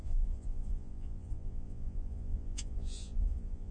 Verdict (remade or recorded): remade